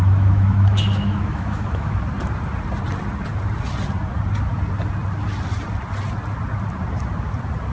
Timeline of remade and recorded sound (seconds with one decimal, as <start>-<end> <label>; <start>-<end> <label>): 0.0-2.0 remade; 2.0-7.7 recorded